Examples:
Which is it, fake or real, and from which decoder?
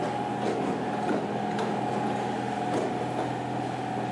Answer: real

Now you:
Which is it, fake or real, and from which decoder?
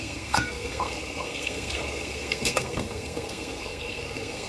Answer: fake, codec, SNAC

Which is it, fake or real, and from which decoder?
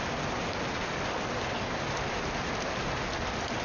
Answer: real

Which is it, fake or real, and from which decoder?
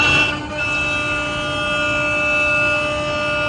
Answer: real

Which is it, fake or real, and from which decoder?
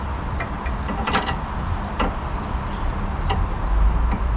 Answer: real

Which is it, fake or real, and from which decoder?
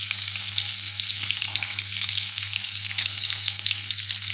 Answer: fake, codec, SNAC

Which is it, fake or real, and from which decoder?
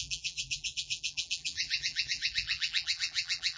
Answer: fake, vocoder, BigVGAN v2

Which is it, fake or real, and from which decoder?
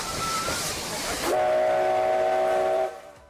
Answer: fake, vocoder, BigVGAN v2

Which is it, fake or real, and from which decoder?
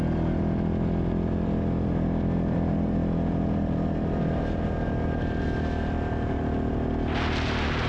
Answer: real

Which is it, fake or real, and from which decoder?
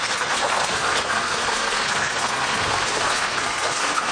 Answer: fake, codec, SNAC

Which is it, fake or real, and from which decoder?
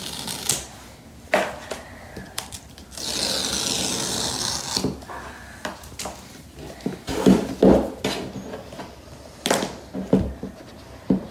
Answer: real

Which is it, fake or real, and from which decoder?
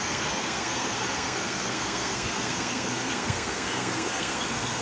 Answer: fake, codec, SNAC